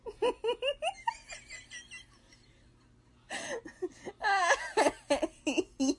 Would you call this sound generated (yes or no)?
no